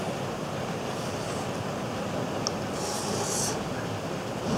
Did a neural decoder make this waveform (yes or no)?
no